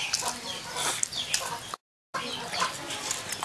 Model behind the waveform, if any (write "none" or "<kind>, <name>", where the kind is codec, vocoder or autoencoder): none